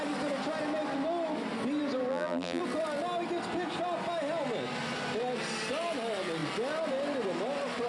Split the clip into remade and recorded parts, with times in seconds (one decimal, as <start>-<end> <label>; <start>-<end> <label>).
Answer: 0.0-2.1 recorded; 2.1-2.6 remade; 2.6-7.9 recorded